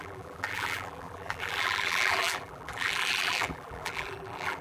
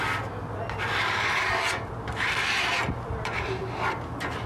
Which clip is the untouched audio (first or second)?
second